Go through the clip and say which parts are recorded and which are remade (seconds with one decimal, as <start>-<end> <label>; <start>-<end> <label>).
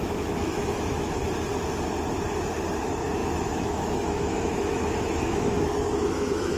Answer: 0.0-1.2 remade; 1.2-2.8 recorded; 2.8-6.6 remade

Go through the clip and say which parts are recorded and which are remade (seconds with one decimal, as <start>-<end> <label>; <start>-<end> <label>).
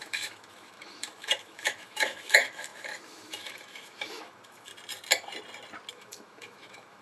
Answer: 0.0-4.7 remade; 4.7-5.9 recorded; 5.9-7.0 remade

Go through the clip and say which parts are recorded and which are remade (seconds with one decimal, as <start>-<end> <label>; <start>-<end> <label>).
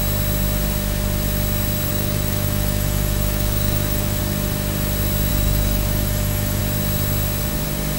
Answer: 0.0-1.9 recorded; 1.9-4.2 remade; 4.2-5.3 recorded; 5.3-6.6 remade; 6.6-8.0 recorded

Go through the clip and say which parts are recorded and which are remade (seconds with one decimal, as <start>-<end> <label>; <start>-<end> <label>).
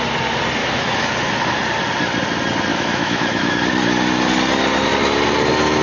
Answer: 0.0-0.6 recorded; 0.6-1.1 remade; 1.1-2.7 recorded; 2.7-3.6 remade; 3.6-5.8 recorded